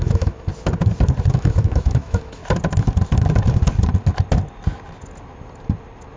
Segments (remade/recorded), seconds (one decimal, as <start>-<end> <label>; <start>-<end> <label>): 0.0-0.5 remade; 0.5-1.3 recorded; 1.3-2.4 remade; 2.4-6.2 recorded